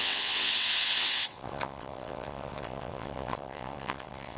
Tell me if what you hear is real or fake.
fake